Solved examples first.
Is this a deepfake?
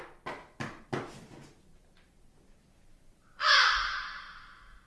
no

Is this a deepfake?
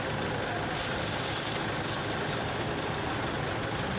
no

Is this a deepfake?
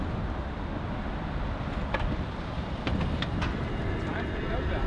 no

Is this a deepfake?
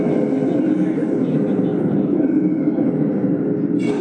no